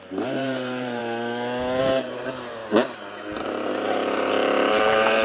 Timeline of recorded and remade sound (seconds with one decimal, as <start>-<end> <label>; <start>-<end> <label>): 0.0-1.0 remade; 1.0-1.8 recorded; 1.8-2.6 remade; 2.6-4.7 recorded; 4.7-5.2 remade